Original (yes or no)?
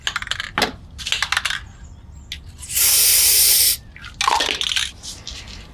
yes